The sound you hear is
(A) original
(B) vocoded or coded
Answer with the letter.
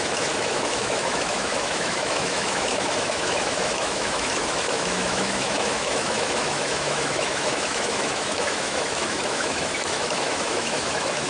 B